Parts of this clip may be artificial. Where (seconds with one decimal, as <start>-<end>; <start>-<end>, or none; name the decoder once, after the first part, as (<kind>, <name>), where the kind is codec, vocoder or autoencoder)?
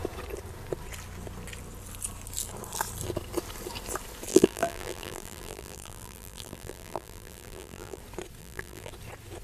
4.3-8.0 (vocoder, BigVGAN v2); 8.4-8.9